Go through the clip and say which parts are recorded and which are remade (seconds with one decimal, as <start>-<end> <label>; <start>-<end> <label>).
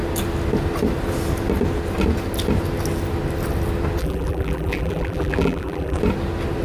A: 0.0-4.0 recorded; 4.0-6.0 remade; 6.0-6.6 recorded